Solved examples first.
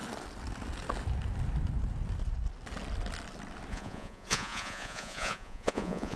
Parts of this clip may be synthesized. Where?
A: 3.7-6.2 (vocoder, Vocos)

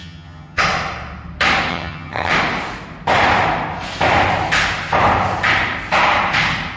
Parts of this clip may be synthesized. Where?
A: 0.0-0.6 (vocoder, HiFi-GAN); 1.7-2.3

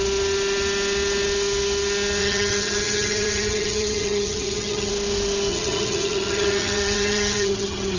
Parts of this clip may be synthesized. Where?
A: 2.2-4.9 (vocoder, HiFi-GAN); 5.5-8.0

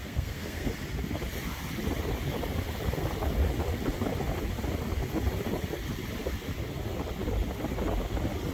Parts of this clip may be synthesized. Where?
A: 0.0-0.7 (codec, SNAC)